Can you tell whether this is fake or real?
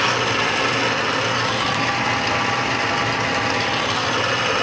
real